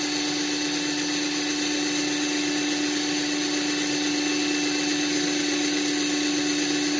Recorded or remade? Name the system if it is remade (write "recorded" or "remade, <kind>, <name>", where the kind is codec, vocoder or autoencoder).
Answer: recorded